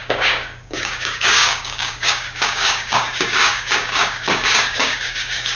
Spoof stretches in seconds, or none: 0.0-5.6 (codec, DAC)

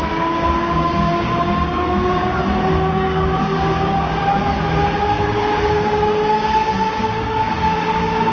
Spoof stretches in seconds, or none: 0.0-2.4 (codec, DAC); 2.9-4.2; 5.0-8.3

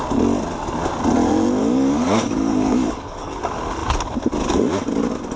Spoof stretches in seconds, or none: 1.6-3.4 (codec, DAC)

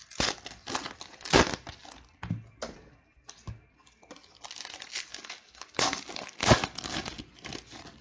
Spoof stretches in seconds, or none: 5.1-7.2 (codec, DAC)

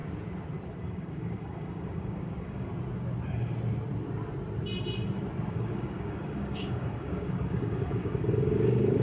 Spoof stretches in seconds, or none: 0.8-2.7 (codec, DAC); 5.5-9.0

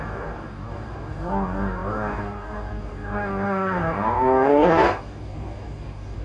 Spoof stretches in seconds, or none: 0.0-6.2 (codec, DAC)

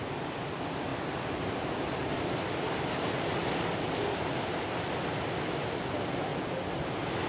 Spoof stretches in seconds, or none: 3.4-4.2 (codec, DAC)